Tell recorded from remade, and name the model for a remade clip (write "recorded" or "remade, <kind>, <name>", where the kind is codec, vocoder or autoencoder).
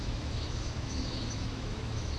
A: remade, autoencoder, DAC-VAE